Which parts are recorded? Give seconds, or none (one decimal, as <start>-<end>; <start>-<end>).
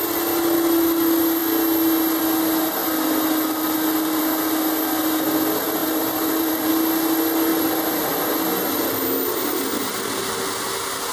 0.0-5.8; 6.7-11.1